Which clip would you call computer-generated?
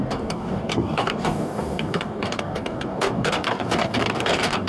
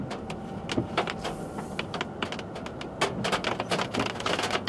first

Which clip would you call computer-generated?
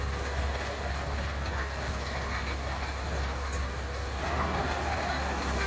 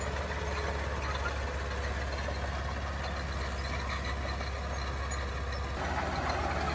first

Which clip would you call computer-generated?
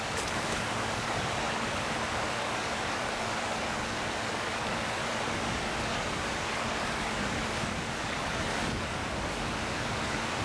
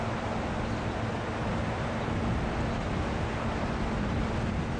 first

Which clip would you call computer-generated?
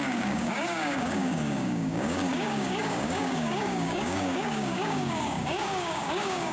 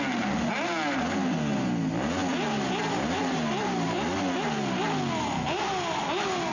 first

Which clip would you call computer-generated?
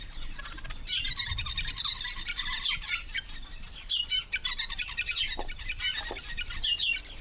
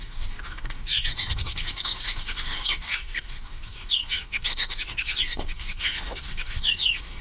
second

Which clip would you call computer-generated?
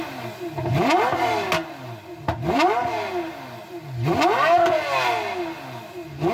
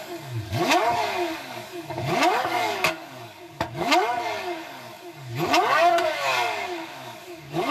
second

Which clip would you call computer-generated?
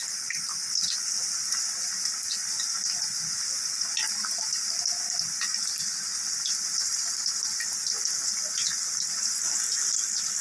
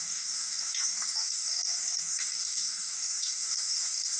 second